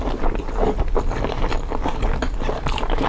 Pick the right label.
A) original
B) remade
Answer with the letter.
A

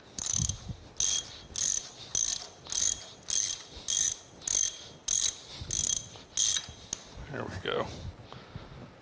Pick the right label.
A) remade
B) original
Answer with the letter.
B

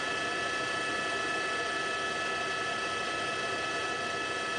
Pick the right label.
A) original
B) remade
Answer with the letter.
A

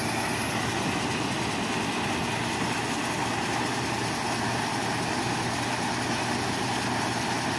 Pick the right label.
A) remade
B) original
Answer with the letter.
B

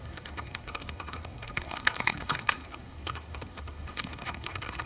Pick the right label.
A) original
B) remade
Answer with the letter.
B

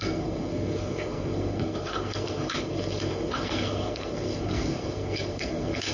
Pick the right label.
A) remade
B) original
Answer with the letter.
A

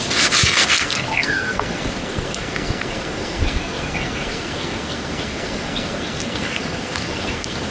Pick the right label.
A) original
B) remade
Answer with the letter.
B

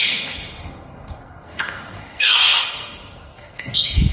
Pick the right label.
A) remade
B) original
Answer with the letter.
A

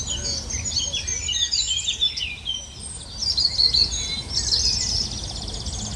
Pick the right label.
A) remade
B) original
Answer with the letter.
B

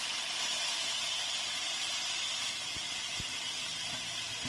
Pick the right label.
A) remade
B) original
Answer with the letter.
B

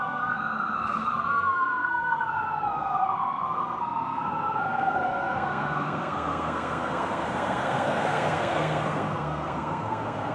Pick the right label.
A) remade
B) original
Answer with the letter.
A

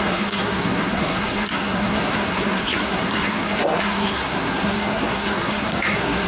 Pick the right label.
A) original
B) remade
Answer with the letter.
B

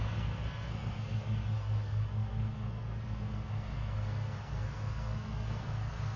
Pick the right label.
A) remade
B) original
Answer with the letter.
A